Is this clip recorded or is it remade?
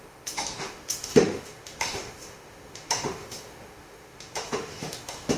remade